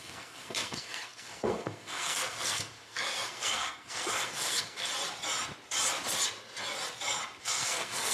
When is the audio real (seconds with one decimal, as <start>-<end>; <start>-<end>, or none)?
4.9-7.4